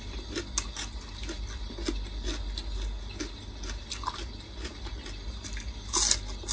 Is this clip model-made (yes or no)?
no